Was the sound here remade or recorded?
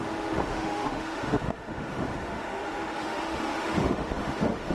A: remade